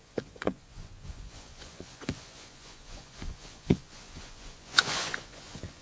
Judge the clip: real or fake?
fake